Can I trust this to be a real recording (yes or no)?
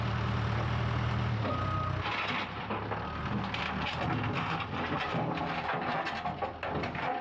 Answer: yes